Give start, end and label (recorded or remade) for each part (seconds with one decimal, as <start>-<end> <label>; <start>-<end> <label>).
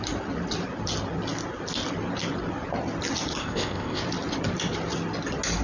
0.0-3.4 recorded; 3.4-4.0 remade; 4.0-5.6 recorded